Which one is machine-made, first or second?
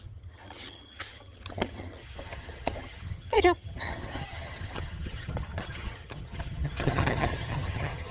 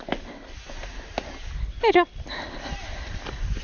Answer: first